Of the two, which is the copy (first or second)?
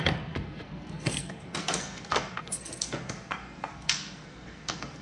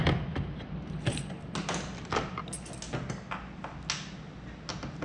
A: first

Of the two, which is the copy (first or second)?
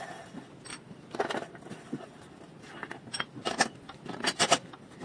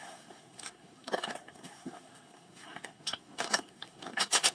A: second